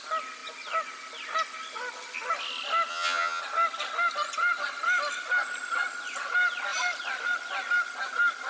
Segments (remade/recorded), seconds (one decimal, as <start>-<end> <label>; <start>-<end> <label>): 0.0-2.9 recorded; 2.9-3.4 remade; 3.4-8.5 recorded